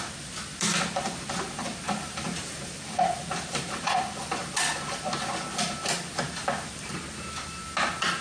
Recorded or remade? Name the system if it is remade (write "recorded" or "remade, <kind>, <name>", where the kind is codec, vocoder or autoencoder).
recorded